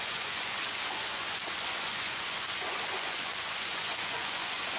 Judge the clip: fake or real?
fake